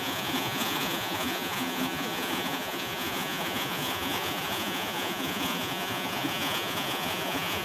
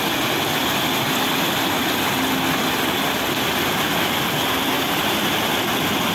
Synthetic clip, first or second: first